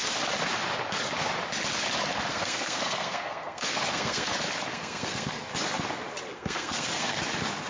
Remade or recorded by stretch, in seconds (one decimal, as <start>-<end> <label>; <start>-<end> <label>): 0.0-2.3 recorded; 2.3-4.3 remade; 4.3-4.7 recorded; 4.7-5.4 remade; 5.4-6.3 recorded; 6.3-7.2 remade; 7.2-7.7 recorded